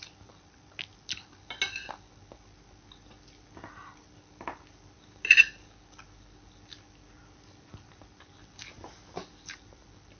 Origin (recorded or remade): recorded